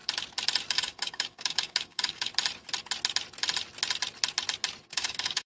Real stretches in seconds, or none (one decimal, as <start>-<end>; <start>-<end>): 0.0-0.7; 2.3-4.9